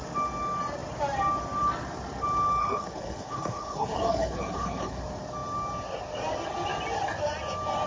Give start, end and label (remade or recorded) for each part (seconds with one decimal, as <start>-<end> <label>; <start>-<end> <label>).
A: 0.0-2.6 recorded; 2.6-5.0 remade; 5.0-7.9 recorded